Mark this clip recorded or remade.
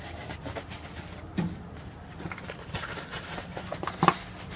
recorded